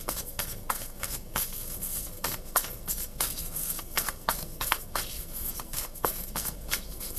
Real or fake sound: fake